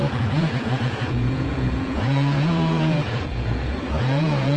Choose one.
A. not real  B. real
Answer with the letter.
A